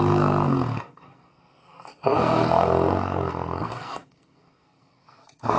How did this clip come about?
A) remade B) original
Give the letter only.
A